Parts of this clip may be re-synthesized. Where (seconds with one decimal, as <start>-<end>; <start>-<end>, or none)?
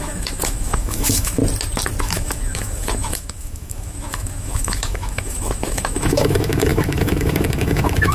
0.0-1.4; 2.0-8.1